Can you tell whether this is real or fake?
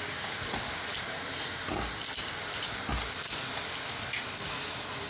real